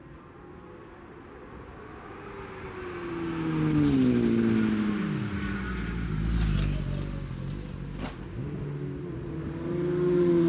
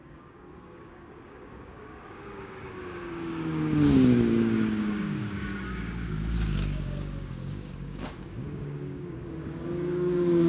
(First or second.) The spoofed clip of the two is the second